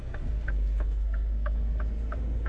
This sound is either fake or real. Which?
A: fake